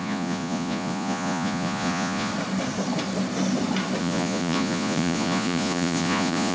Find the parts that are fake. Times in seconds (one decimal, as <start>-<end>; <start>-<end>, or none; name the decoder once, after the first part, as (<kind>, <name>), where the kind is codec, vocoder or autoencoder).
0.0-2.3 (vocoder, Vocos); 4.0-6.5